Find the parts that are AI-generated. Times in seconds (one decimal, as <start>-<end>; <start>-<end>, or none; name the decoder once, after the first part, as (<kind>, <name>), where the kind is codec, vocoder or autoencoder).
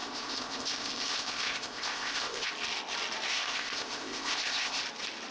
0.0-2.5 (codec, ZipCodec); 3.3-4.8